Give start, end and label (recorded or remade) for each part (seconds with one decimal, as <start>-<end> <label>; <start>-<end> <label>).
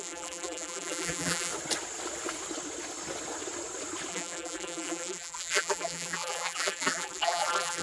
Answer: 0.0-1.5 remade; 1.5-4.1 recorded; 4.1-7.8 remade